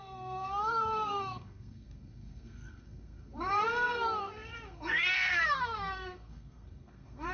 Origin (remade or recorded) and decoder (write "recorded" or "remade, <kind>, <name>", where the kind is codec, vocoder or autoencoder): remade, codec, SNAC